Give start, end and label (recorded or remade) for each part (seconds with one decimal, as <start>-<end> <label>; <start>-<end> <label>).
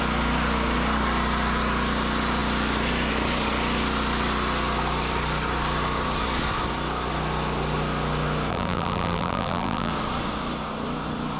0.0-8.5 recorded; 8.5-9.9 remade; 9.9-11.4 recorded